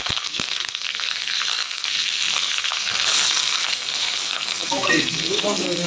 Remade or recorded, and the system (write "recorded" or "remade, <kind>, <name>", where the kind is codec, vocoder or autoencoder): remade, codec, SNAC